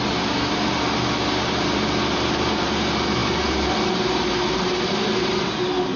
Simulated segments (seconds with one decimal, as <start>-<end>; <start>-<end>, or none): none